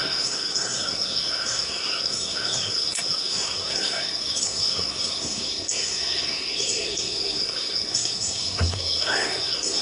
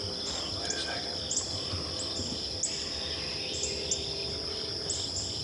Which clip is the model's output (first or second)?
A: first